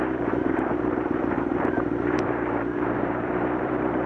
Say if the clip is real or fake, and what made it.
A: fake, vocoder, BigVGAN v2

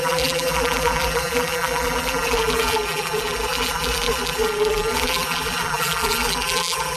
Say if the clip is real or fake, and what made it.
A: fake, vocoder, BigVGAN v2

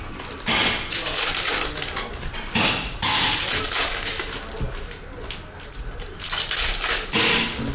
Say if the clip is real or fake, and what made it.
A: real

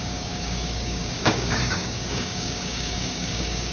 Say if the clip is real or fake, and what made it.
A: fake, codec, DAC